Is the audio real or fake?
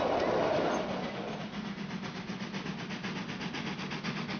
real